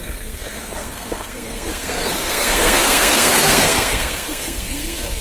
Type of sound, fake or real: fake